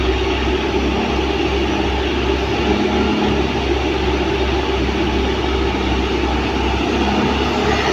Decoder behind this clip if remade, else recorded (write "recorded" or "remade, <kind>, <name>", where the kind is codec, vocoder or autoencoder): recorded